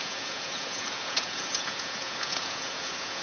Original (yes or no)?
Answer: no